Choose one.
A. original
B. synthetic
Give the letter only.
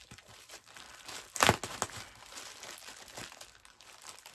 A